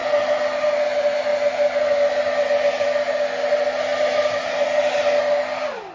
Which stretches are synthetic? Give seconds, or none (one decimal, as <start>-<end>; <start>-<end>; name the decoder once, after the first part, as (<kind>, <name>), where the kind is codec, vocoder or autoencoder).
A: none